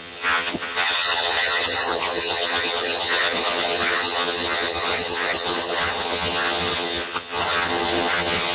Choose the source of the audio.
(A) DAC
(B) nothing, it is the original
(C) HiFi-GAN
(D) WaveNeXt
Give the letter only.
C